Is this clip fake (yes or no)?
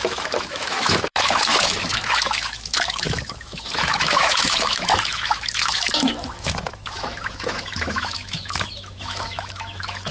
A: yes